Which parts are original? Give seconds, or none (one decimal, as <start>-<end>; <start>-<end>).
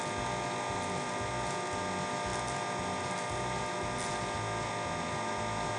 0.0-5.8